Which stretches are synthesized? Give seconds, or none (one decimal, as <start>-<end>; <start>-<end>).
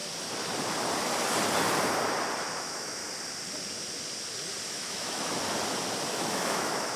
2.6-3.0; 4.7-5.3; 6.1-7.0